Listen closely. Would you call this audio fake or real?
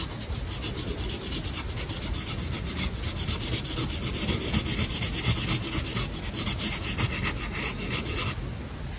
real